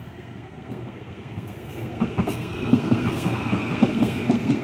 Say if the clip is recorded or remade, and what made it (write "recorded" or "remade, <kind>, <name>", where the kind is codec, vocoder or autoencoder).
remade, codec, SNAC